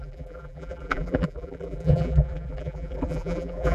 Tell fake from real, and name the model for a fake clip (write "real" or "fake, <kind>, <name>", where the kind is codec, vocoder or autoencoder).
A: fake, vocoder, BigVGAN v2